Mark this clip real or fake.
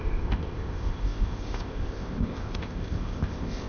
fake